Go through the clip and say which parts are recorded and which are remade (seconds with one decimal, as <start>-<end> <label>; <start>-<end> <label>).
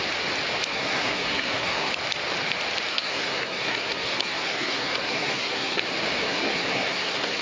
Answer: 0.0-0.7 recorded; 0.7-1.9 remade; 1.9-2.9 recorded; 2.9-5.8 remade; 5.8-6.2 recorded; 6.2-7.4 remade